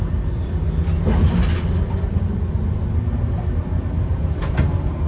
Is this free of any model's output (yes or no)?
yes